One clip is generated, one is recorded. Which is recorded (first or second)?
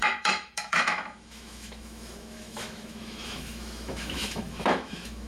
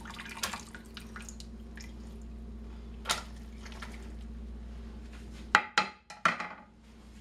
second